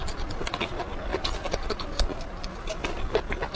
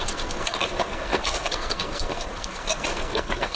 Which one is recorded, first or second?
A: first